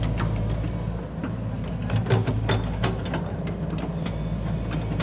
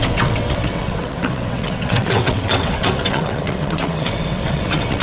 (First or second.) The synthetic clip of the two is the second